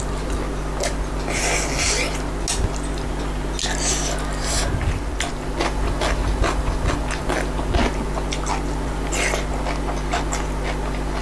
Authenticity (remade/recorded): recorded